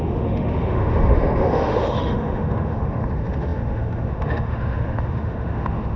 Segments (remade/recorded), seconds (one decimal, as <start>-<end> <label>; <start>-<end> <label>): 0.0-6.0 remade